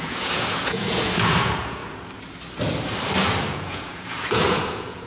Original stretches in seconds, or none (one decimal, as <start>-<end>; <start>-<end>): 1.8-3.4